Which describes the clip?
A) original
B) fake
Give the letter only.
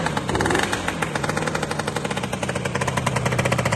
A